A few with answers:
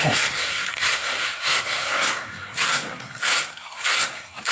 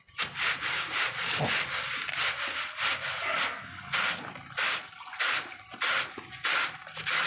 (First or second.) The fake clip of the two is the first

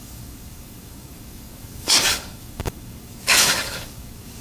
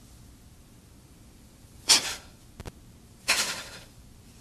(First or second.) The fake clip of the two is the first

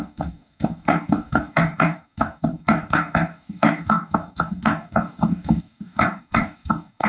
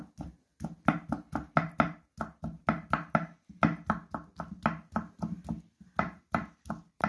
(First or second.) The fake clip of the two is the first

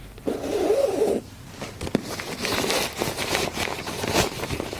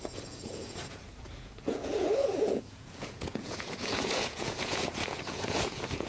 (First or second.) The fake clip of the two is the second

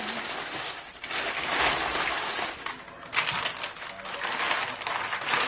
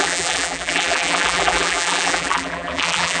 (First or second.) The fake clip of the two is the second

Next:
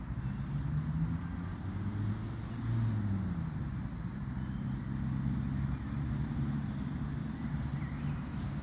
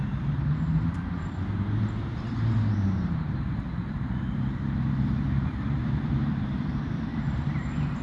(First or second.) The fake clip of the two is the second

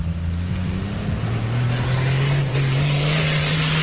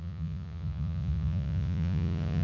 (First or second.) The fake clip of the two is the second